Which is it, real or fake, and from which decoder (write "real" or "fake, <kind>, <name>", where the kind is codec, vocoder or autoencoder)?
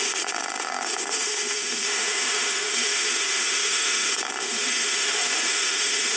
fake, autoencoder, DAC-VAE